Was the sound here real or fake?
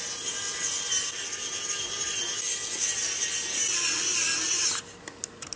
real